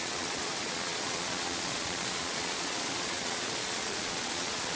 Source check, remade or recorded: remade